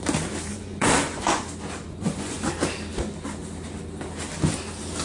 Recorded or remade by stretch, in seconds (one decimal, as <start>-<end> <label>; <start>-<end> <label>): 0.0-0.5 recorded; 0.5-1.4 remade; 1.4-1.9 recorded; 1.9-2.5 remade; 2.5-5.0 recorded